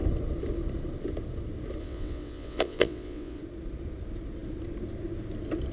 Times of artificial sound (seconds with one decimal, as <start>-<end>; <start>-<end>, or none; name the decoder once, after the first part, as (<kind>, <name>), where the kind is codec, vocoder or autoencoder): 1.8-3.4 (vocoder, WaveNeXt)